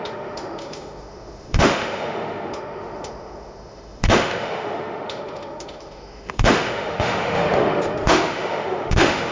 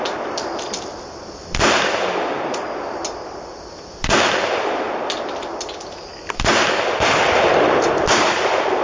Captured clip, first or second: second